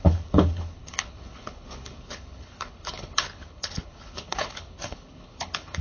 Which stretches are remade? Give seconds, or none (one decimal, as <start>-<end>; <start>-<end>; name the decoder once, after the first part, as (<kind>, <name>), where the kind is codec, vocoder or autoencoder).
0.0-5.8 (codec, HILCodec)